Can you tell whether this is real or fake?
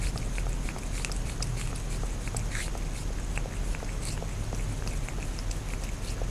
real